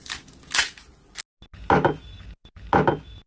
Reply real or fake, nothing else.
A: real